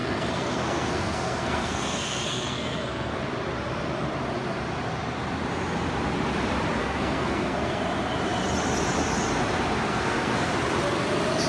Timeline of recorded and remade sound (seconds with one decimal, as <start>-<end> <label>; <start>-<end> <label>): 0.0-3.2 remade; 3.2-6.8 recorded; 6.8-7.8 remade; 7.8-9.9 recorded; 9.9-10.5 remade; 10.5-11.5 recorded